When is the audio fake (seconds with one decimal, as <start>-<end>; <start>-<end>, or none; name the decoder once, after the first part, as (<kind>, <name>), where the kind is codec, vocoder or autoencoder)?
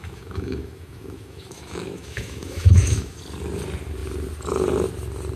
0.0-3.2 (autoencoder, DAC-VAE)